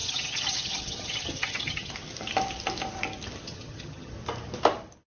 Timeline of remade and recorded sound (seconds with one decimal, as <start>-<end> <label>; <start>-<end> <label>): 0.0-1.9 remade; 1.9-3.4 recorded; 3.4-4.1 remade; 4.1-5.2 recorded